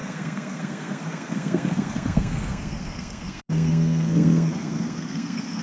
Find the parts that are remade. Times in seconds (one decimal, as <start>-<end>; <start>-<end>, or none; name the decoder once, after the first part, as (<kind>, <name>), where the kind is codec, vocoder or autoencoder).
0.0-5.6 (codec, SNAC)